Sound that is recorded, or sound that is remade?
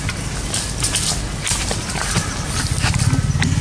recorded